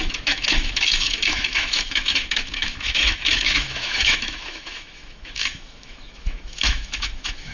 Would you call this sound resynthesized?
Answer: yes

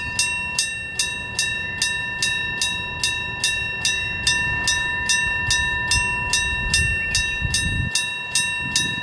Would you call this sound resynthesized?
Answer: no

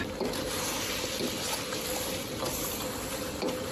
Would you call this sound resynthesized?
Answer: no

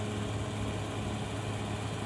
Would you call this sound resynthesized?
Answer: no